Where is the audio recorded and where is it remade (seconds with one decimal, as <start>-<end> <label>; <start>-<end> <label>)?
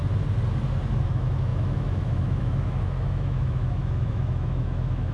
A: 0.0-1.0 recorded; 1.0-5.1 remade